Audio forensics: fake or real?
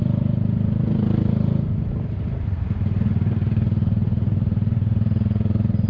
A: fake